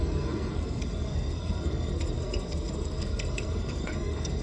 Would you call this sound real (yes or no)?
no